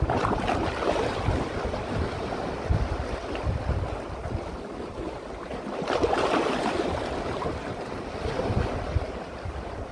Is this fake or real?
real